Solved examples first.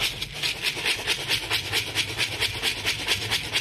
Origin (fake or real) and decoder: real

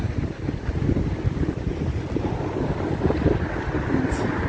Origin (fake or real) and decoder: real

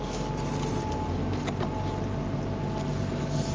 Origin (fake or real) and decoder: real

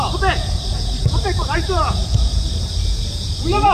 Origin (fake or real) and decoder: fake, vocoder, Vocos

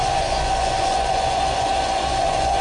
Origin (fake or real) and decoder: fake, vocoder, Vocos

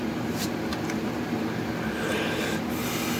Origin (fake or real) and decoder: real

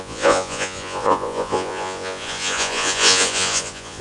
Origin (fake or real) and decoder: fake, vocoder, Vocos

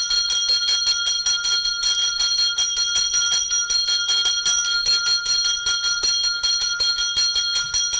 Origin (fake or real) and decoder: real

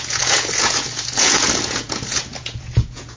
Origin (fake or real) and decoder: fake, vocoder, Vocos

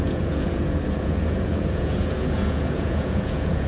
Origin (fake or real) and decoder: fake, vocoder, Vocos